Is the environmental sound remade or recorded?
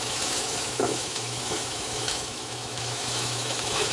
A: remade